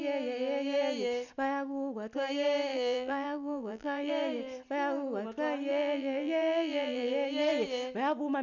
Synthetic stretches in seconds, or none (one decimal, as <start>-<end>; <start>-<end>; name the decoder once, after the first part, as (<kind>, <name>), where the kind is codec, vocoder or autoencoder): 2.7-4.1 (vocoder, BigVGAN v2); 5.7-7.1